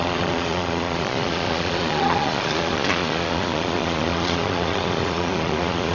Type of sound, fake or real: fake